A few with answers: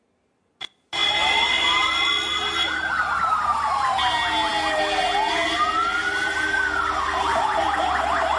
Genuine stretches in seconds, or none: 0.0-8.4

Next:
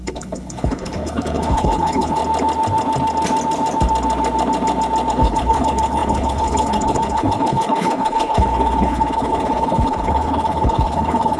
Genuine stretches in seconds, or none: 2.2-5.1